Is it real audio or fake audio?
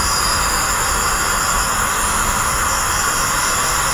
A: real